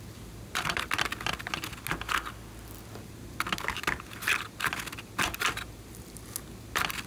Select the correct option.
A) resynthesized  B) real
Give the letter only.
B